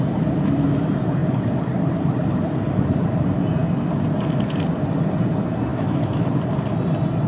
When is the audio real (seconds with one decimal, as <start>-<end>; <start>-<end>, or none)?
0.0-5.7; 6.4-7.3